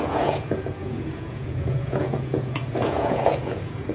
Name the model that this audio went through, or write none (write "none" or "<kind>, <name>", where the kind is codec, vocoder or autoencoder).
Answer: vocoder, Vocos